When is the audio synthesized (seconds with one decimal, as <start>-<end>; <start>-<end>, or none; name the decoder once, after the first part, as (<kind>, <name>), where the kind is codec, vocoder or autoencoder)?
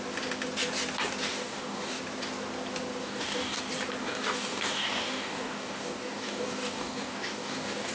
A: 1.3-2.0 (codec, DAC); 3.0-3.6; 4.0-7.9